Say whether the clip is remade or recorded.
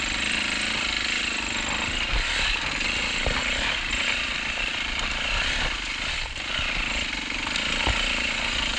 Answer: remade